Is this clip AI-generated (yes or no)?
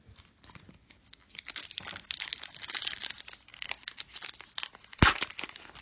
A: no